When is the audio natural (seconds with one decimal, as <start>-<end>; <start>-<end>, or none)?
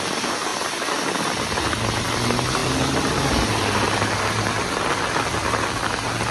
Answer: 0.0-6.3